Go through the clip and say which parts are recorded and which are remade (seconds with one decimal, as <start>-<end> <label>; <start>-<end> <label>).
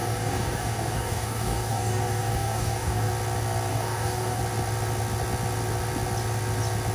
0.0-3.1 remade; 3.1-3.7 recorded; 3.7-4.4 remade; 4.4-6.9 recorded